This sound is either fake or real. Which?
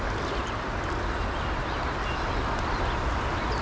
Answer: real